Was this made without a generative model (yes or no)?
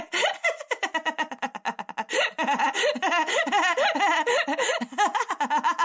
yes